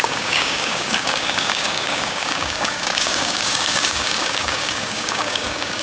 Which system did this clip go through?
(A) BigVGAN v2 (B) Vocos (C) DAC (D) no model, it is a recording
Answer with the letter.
C